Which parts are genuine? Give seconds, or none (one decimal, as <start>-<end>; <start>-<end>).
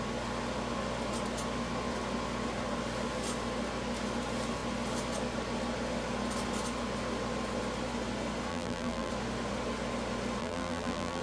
0.0-8.5; 9.1-10.4